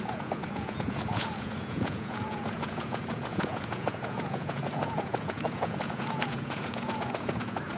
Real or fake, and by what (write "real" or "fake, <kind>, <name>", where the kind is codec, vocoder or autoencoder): fake, vocoder, Vocos